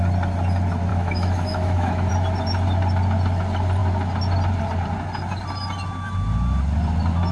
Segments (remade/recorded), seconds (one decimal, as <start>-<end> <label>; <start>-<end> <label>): 0.0-0.9 recorded; 0.9-2.1 remade; 2.1-7.3 recorded